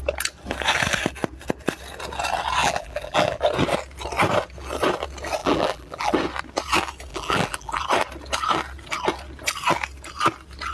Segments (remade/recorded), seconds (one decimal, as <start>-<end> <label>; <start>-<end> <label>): 0.0-2.6 recorded; 2.6-3.4 remade; 3.4-5.4 recorded; 5.4-6.1 remade; 6.1-7.1 recorded; 7.1-7.8 remade; 7.8-10.7 recorded